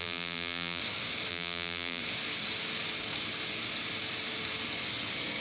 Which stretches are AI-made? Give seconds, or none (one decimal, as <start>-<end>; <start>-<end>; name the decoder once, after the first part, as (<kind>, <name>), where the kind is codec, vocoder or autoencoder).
0.0-0.8 (vocoder, BigVGAN v2); 1.3-2.0